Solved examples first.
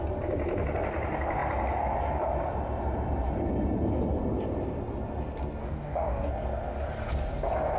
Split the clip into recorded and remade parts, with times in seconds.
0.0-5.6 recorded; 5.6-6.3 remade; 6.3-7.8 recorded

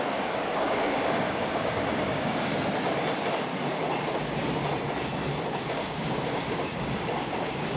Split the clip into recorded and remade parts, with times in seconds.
0.0-2.5 remade; 2.5-5.6 recorded; 5.6-7.8 remade

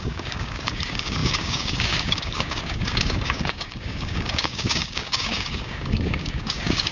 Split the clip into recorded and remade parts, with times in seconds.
0.0-6.9 remade

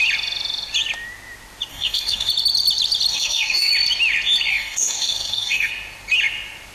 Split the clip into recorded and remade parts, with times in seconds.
0.0-1.7 recorded; 1.7-2.3 remade; 2.3-3.1 recorded; 3.1-3.7 remade; 3.7-4.5 recorded; 4.5-5.7 remade; 5.7-6.7 recorded

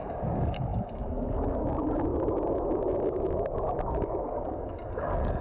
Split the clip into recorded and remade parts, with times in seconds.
0.0-5.4 remade

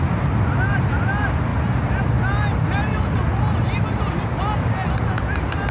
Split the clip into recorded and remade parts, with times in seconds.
0.0-5.7 recorded

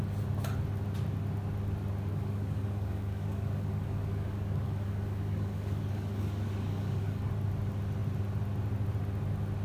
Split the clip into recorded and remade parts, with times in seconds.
0.0-2.1 recorded; 2.1-7.3 remade; 7.3-9.6 recorded